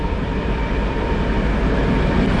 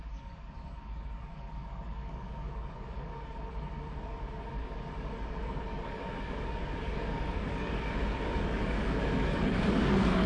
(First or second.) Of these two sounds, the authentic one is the first